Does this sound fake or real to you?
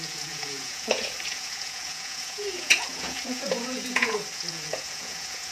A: fake